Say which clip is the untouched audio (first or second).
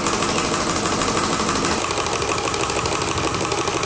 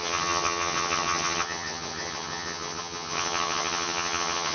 first